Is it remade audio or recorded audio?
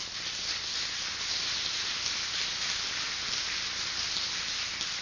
recorded